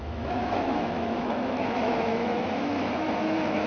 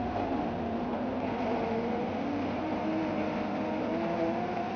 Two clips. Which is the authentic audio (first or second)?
second